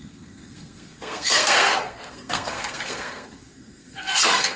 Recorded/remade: remade